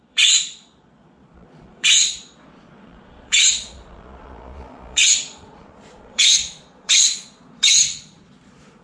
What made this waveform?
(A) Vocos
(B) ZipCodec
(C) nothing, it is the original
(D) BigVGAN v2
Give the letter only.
A